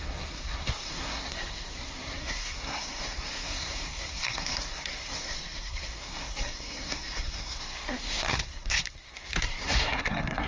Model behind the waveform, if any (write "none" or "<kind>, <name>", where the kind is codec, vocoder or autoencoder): codec, SNAC